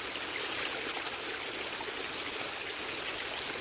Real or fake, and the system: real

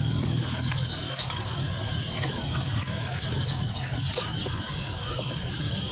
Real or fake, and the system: fake, codec, DAC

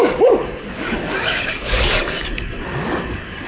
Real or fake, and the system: fake, codec, DAC